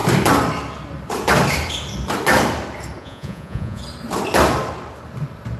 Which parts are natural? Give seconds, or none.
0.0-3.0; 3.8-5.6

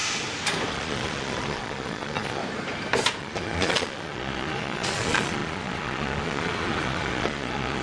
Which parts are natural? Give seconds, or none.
0.0-0.7; 2.4-3.2

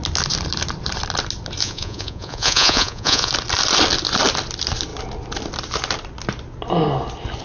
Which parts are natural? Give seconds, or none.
0.0-1.6; 3.3-7.4

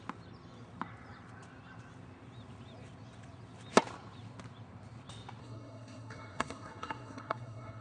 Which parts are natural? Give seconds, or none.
0.0-5.4

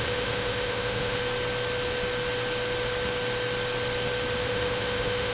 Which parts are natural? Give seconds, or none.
1.2-4.4

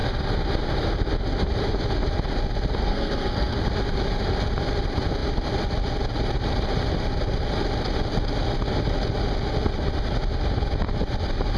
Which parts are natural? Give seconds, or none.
0.0-2.8; 3.6-11.6